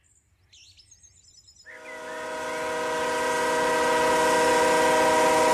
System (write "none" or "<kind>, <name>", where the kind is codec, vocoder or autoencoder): none